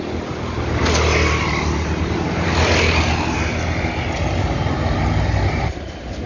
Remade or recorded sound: recorded